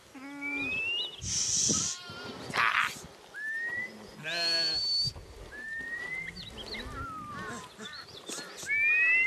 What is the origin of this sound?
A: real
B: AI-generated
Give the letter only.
A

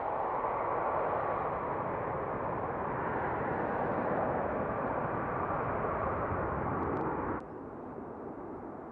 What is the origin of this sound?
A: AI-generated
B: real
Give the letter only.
B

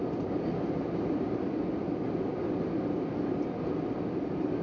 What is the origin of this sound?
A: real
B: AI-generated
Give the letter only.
A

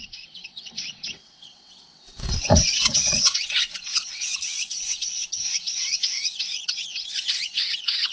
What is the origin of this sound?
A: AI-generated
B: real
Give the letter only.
A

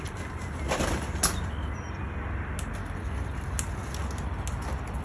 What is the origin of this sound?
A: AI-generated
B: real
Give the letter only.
B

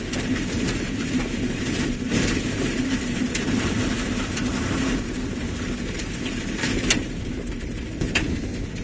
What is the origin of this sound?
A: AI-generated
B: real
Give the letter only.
A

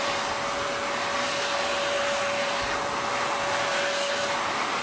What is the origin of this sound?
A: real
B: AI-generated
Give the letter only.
A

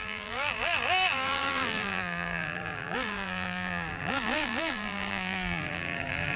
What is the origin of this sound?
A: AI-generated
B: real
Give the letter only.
A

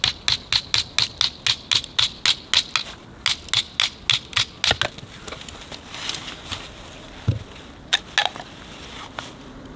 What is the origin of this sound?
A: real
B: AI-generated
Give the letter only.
A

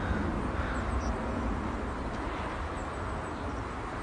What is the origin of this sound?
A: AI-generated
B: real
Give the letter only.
B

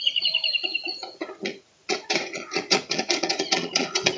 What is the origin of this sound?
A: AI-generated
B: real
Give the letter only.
A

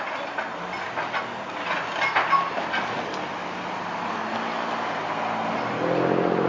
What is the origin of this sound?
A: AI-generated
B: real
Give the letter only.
B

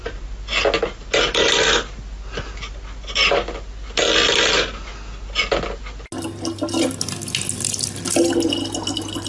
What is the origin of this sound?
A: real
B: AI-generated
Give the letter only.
A